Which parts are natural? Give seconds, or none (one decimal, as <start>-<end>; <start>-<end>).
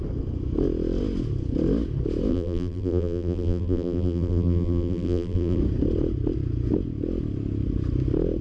0.0-2.3; 5.6-8.4